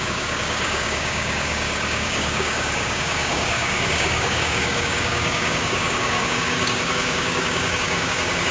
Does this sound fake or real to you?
fake